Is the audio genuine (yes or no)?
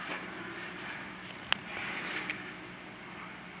yes